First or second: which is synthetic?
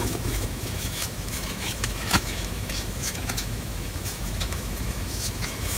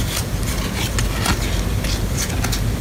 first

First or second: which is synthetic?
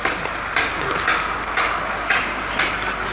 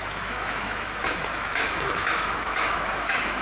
second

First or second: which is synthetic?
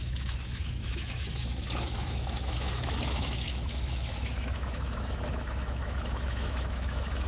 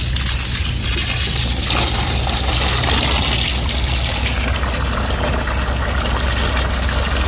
first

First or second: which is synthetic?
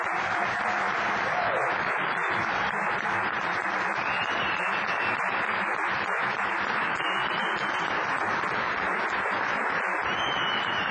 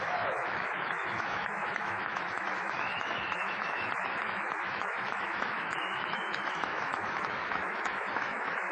second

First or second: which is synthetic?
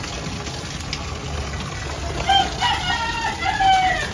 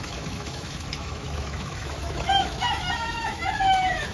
second